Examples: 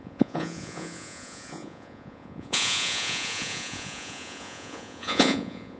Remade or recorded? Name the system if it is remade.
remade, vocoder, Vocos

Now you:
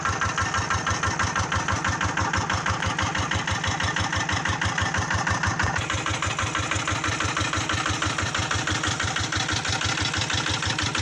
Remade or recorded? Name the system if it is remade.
recorded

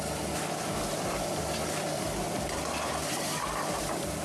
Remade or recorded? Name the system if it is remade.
remade, vocoder, BigVGAN v2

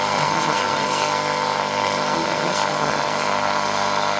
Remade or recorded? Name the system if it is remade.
remade, codec, SNAC